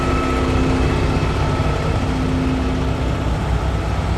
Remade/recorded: recorded